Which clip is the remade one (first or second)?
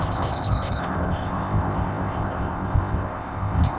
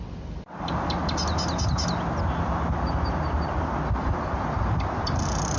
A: first